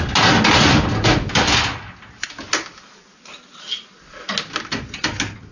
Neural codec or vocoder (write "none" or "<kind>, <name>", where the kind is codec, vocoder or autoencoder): none